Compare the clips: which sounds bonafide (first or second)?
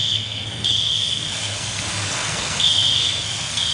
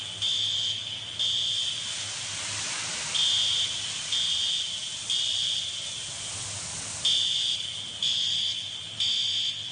second